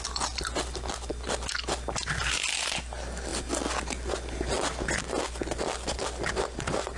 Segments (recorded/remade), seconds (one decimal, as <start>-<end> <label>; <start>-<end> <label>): 0.0-7.0 recorded